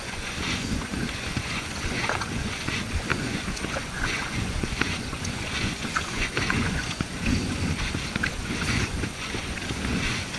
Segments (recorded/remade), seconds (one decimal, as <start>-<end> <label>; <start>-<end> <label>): 0.0-10.4 remade